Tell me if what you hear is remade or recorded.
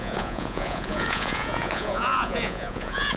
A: remade